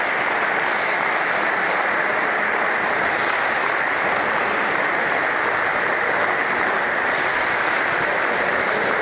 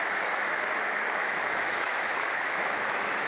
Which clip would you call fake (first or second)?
second